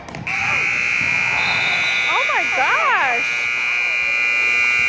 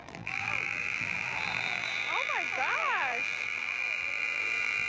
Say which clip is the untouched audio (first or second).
first